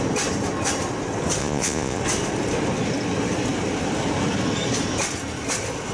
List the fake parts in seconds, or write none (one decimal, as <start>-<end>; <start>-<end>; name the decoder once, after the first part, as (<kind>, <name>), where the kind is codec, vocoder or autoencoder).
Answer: 1.4-2.0 (vocoder, Vocos)